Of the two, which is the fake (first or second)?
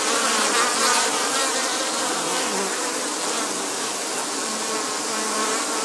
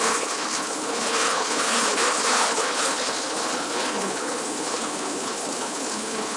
second